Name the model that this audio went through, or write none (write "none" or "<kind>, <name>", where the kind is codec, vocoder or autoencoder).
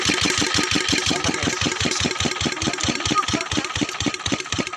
none